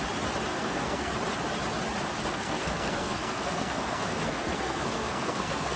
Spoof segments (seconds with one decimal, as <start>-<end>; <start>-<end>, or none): 0.5-1.1; 2.3-5.8